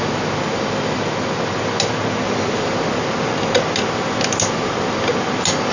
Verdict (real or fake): real